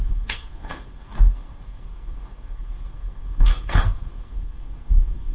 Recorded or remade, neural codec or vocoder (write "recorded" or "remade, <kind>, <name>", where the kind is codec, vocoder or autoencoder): remade, codec, SNAC